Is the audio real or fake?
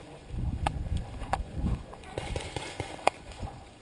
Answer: fake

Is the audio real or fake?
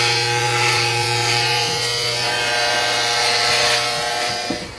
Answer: fake